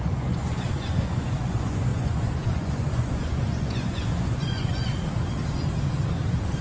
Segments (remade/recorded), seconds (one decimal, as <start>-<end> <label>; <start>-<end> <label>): 0.0-4.9 remade; 4.9-6.6 recorded